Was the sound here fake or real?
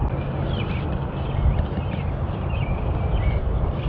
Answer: fake